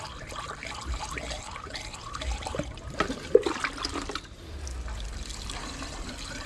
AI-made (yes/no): no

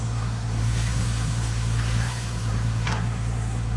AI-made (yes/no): yes